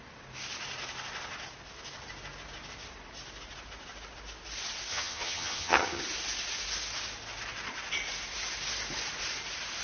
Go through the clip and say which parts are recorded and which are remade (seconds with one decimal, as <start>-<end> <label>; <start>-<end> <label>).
0.0-4.9 recorded; 4.9-6.0 remade; 6.0-9.8 recorded